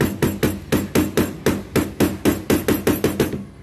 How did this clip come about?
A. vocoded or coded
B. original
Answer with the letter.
B